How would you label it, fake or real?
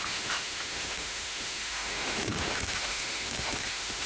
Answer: fake